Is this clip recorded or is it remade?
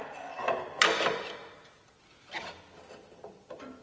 recorded